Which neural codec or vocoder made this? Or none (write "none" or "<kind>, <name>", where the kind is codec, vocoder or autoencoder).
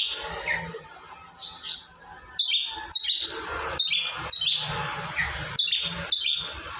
none